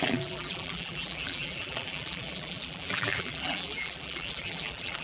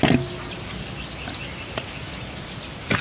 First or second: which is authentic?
second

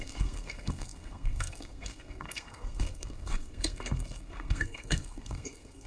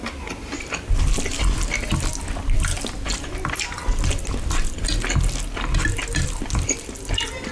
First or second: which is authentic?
second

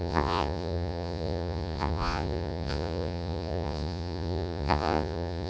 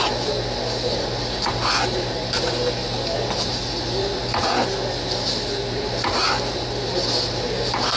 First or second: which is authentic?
second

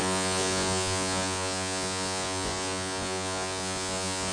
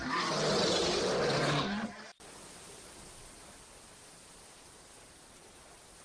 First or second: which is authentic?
second